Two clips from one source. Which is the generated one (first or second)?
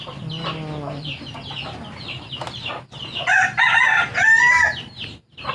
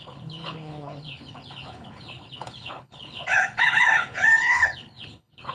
second